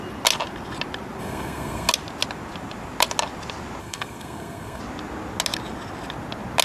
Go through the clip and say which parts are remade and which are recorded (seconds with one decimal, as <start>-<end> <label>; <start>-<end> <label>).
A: 0.0-1.2 recorded; 1.2-1.9 remade; 1.9-3.8 recorded; 3.8-4.8 remade; 4.8-6.6 recorded